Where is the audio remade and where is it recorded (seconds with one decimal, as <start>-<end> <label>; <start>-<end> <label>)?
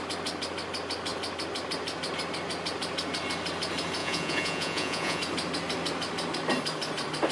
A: 0.0-4.0 recorded; 4.0-5.2 remade; 5.2-7.3 recorded